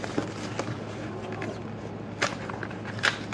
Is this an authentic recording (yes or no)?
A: yes